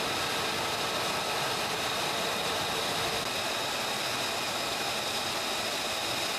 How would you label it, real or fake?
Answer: real